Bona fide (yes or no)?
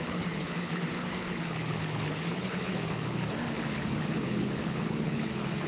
no